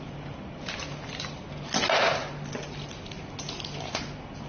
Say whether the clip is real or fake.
real